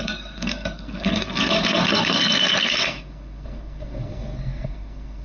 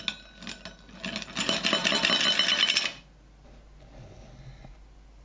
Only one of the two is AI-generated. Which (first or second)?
first